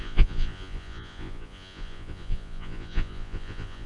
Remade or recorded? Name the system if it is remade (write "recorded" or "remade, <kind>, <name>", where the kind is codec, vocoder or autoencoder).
remade, vocoder, Vocos